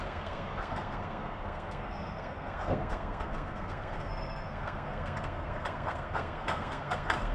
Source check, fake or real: fake